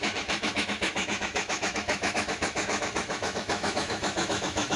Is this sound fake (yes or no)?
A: yes